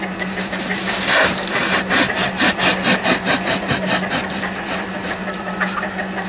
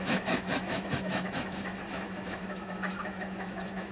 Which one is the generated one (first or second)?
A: second